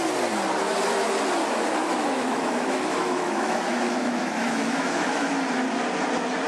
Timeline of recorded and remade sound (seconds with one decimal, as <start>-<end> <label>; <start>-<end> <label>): 0.0-1.8 recorded; 1.8-5.3 remade; 5.3-6.5 recorded